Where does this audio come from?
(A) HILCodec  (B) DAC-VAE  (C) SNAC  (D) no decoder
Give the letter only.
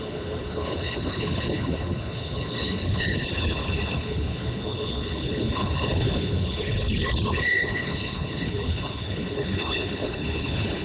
A